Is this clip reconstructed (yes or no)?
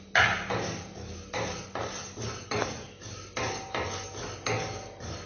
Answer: no